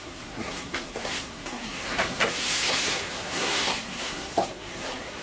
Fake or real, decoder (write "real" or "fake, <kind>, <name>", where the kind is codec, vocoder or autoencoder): fake, codec, SNAC